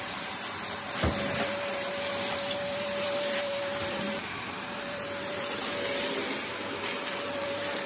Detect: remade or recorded remade